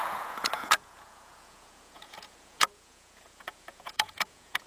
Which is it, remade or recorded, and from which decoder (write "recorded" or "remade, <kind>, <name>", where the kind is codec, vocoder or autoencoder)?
remade, vocoder, Vocos